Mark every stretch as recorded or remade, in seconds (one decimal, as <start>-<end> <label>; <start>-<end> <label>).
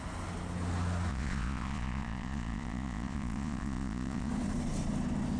0.0-1.1 recorded; 1.1-4.3 remade; 4.3-5.4 recorded